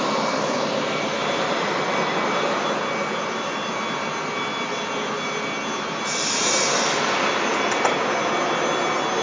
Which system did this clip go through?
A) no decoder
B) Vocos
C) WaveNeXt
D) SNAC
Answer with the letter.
A